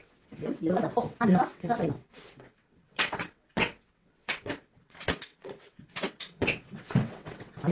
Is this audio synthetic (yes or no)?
yes